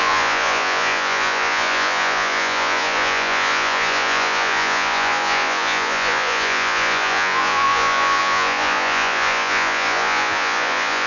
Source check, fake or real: fake